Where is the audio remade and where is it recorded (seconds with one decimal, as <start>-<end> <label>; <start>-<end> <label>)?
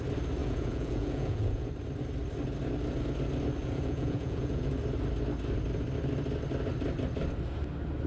0.0-0.4 recorded; 0.4-1.7 remade; 1.7-3.6 recorded; 3.6-4.7 remade; 4.7-8.1 recorded